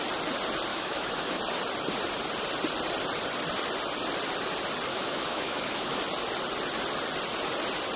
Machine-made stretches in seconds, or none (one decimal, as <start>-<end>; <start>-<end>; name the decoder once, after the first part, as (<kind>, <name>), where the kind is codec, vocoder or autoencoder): 0.7-1.4 (autoencoder, DAC-VAE); 4.9-6.0

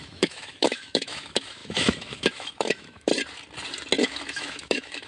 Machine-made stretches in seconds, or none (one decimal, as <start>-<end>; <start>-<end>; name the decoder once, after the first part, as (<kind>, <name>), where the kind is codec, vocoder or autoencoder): 0.0-3.1 (autoencoder, DAC-VAE); 4.0-5.1

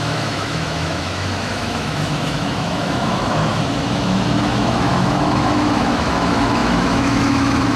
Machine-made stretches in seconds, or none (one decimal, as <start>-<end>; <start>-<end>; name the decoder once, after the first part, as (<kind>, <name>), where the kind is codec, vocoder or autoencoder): 0.0-7.8 (autoencoder, DAC-VAE)